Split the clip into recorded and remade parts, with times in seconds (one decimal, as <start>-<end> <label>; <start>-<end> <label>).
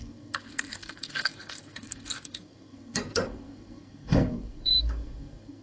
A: 0.0-5.6 remade